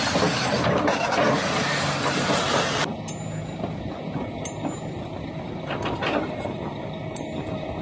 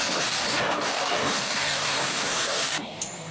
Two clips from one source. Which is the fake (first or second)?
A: second